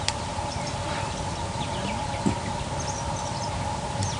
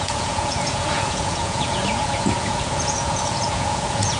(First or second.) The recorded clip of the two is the first